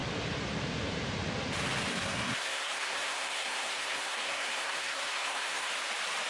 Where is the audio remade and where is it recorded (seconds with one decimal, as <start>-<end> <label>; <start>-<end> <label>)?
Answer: 0.0-1.9 recorded; 1.9-5.7 remade; 5.7-6.3 recorded